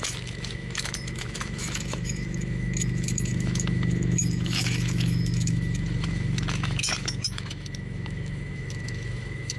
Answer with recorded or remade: remade